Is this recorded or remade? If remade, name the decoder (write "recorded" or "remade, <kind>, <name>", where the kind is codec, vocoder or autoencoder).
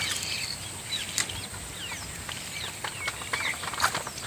recorded